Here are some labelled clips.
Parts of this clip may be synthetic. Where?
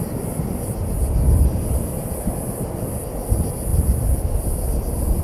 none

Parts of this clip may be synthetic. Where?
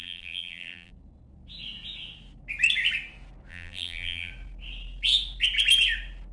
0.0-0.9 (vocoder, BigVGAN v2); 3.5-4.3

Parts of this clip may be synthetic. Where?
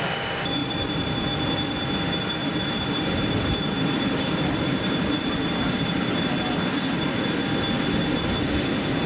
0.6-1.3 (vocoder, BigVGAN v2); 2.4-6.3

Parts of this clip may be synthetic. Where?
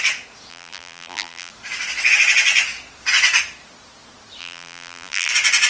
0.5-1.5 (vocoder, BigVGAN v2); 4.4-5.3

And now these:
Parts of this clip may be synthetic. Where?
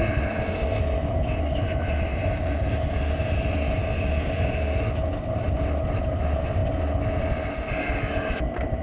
2.1-2.9 (vocoder, BigVGAN v2)